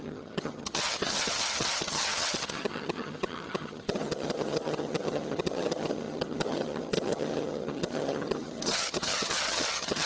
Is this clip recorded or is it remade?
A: remade